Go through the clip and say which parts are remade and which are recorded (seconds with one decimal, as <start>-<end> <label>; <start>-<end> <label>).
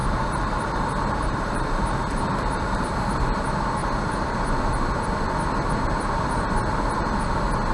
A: 0.0-1.8 remade; 1.8-3.8 recorded; 3.8-4.4 remade; 4.4-7.7 recorded